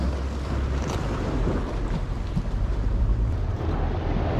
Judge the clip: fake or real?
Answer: fake